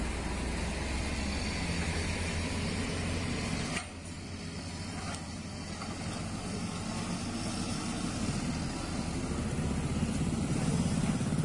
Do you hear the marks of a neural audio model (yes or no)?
no